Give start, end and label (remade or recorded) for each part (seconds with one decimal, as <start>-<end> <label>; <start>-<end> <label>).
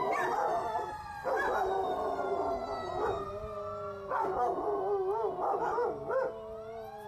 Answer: 0.0-7.1 recorded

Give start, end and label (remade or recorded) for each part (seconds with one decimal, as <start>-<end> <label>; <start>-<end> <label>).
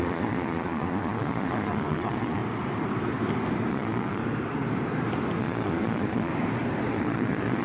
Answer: 0.0-2.4 remade; 2.4-3.7 recorded; 3.7-4.2 remade; 4.2-5.4 recorded; 5.4-6.3 remade; 6.3-6.9 recorded; 6.9-7.6 remade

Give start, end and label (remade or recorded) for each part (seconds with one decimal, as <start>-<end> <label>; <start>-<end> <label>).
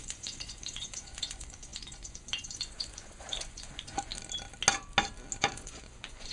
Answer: 0.0-4.1 remade; 4.1-5.4 recorded; 5.4-6.3 remade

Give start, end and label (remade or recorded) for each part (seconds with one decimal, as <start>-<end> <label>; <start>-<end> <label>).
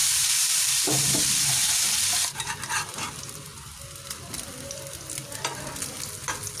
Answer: 0.0-2.5 remade; 2.5-6.6 recorded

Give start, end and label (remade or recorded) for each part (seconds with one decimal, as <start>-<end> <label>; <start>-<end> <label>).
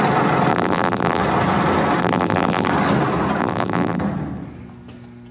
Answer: 0.0-0.5 recorded; 0.5-1.2 remade; 1.2-2.0 recorded; 2.0-2.7 remade; 2.7-3.4 recorded; 3.4-4.0 remade; 4.0-5.3 recorded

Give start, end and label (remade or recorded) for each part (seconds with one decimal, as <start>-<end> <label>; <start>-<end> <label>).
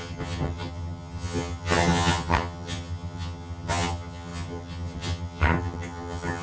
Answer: 0.0-6.4 remade